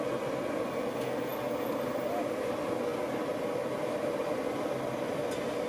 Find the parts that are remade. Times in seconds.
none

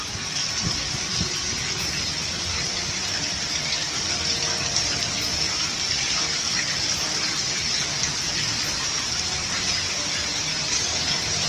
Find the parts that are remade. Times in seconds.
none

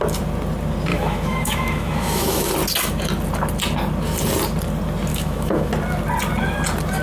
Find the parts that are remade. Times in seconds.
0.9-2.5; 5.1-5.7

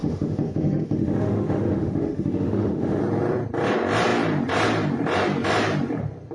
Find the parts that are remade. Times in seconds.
0.0-3.0

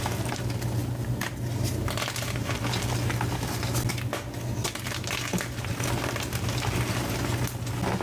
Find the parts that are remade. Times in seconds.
none

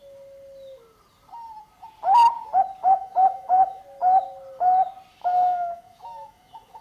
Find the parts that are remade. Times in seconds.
2.8-3.8; 5.1-6.8

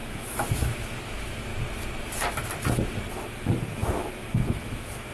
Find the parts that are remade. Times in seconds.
0.0-1.5; 3.1-5.1